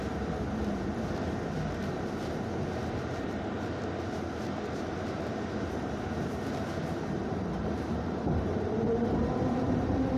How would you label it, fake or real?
fake